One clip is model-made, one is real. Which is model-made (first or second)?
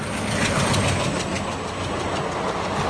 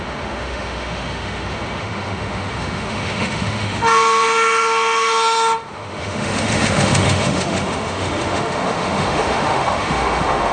second